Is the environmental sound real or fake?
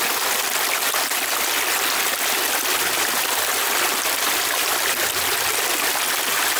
real